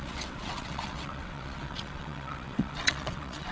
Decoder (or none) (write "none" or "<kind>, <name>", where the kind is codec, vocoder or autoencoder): vocoder, WaveNeXt